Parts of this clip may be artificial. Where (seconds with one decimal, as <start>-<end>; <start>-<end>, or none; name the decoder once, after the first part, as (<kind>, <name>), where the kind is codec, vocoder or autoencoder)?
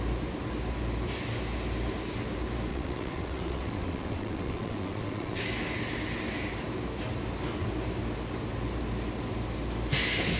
2.7-5.4 (vocoder, WaveNeXt)